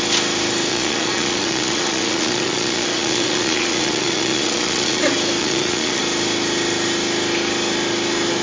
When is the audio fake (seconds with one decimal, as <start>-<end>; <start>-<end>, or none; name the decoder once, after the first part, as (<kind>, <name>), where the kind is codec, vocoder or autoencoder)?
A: 0.7-5.0 (vocoder, Vocos); 5.4-6.0